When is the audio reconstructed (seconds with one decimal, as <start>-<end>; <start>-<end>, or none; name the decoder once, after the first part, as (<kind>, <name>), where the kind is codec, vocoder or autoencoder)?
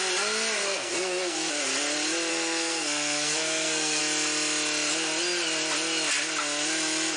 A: 0.6-1.5 (codec, SNAC); 2.3-4.0